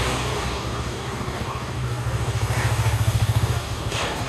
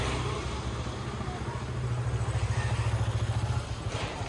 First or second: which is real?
second